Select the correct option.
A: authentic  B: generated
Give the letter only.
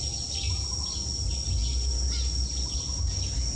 A